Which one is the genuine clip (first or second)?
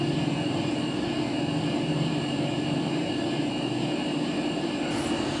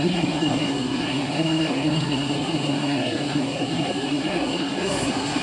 first